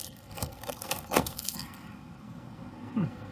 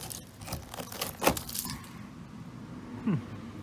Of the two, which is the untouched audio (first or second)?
second